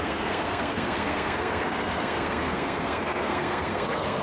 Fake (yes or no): yes